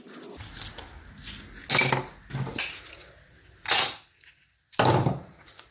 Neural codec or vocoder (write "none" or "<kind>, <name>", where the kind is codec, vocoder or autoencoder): none